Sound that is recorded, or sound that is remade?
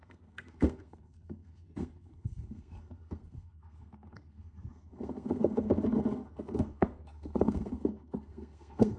remade